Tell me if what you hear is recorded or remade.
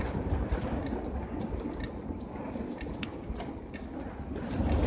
recorded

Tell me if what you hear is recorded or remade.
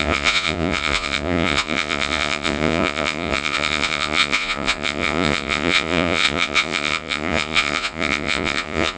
remade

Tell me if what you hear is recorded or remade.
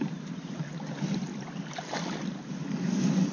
recorded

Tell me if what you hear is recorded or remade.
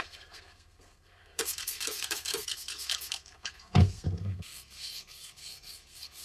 remade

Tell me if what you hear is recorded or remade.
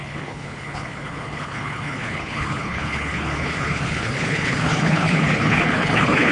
remade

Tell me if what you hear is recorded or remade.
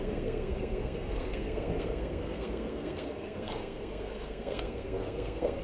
remade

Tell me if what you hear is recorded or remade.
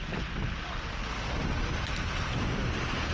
recorded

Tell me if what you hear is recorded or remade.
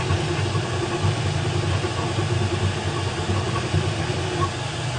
recorded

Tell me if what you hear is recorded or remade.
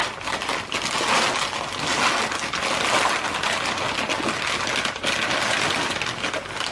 recorded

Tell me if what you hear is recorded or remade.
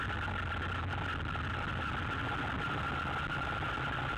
recorded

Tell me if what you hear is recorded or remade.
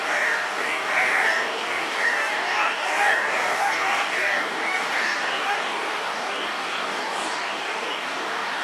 remade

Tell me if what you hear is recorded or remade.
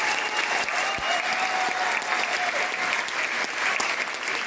recorded